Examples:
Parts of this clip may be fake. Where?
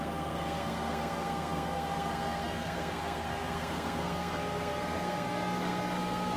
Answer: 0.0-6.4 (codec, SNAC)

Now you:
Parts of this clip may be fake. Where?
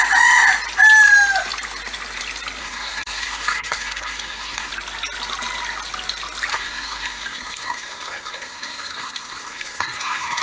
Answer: 2.6-4.7 (codec, SNAC); 6.5-10.4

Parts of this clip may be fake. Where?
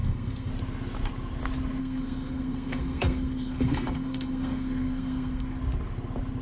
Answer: 0.0-0.5 (codec, SNAC); 1.8-5.6